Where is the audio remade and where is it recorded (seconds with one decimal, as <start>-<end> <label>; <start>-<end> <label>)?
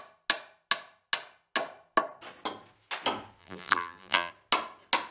0.0-3.4 recorded; 3.4-4.3 remade; 4.3-5.1 recorded